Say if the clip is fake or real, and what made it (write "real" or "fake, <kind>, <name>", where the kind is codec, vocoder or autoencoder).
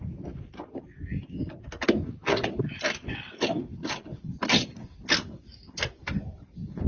real